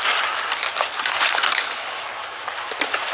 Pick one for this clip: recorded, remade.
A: recorded